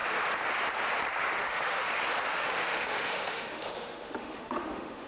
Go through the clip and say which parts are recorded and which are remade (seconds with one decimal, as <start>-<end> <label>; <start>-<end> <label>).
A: 0.0-1.3 recorded; 1.3-1.9 remade; 1.9-2.3 recorded; 2.3-5.1 remade